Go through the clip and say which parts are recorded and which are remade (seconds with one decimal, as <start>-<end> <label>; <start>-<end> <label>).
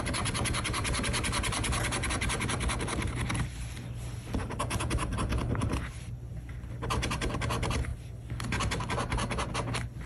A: 0.0-10.1 recorded